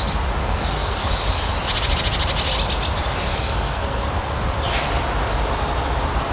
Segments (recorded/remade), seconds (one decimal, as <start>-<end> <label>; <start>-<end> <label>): 0.0-0.4 recorded; 0.4-1.1 remade; 1.1-3.3 recorded; 3.3-4.1 remade; 4.1-6.3 recorded